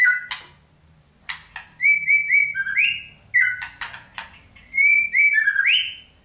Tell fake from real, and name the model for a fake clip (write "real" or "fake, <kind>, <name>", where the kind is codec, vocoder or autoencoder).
real